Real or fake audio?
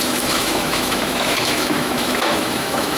fake